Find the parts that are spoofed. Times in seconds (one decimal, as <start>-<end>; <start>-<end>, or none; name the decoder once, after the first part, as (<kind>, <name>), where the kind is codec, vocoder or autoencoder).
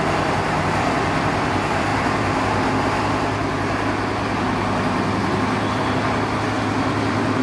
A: none